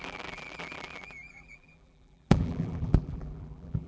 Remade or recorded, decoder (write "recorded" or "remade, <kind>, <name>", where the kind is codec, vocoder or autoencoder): remade, vocoder, BigVGAN v2